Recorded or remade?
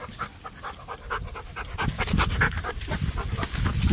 recorded